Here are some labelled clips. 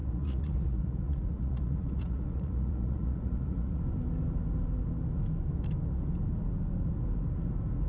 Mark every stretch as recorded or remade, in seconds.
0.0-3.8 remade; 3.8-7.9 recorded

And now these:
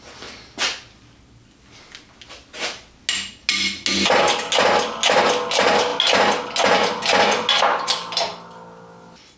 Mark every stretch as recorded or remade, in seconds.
0.0-9.4 recorded

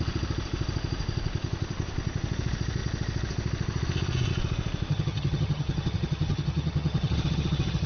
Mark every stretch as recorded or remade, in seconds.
0.0-4.9 recorded; 4.9-7.9 remade

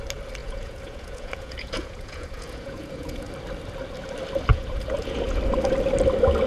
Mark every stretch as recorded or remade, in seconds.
0.0-0.4 recorded; 0.4-3.3 remade; 3.3-4.5 recorded; 4.5-5.4 remade; 5.4-6.5 recorded

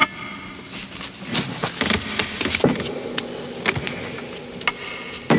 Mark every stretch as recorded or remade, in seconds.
0.0-5.4 recorded

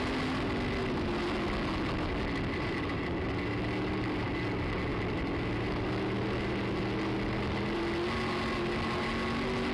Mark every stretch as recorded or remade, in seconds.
0.0-9.7 recorded